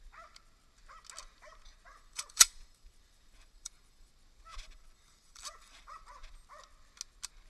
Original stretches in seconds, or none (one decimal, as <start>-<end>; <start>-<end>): 0.0-1.9; 4.1-4.5; 6.0-7.5